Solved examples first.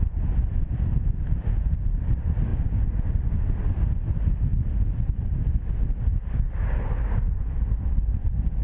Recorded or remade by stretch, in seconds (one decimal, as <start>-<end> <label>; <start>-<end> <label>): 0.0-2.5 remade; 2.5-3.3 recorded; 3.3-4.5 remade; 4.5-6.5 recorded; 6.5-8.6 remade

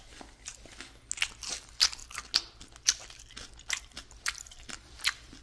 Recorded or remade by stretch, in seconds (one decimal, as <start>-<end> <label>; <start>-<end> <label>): 0.0-0.5 remade; 0.5-1.4 recorded; 1.4-2.0 remade; 2.0-3.8 recorded; 3.8-5.4 remade

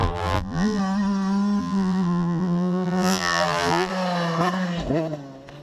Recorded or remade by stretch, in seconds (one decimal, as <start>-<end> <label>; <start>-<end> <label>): 0.0-0.8 remade; 0.8-1.6 recorded; 1.6-3.9 remade; 3.9-5.6 recorded